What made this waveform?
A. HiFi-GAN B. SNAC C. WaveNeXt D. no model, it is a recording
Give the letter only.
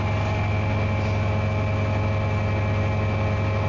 D